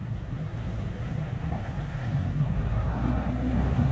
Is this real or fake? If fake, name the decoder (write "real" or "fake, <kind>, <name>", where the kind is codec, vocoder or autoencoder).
fake, codec, SNAC